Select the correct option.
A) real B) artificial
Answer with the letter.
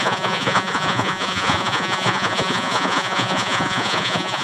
B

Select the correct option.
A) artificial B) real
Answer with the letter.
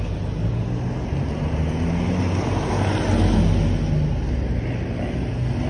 B